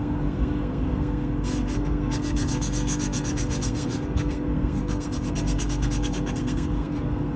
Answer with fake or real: fake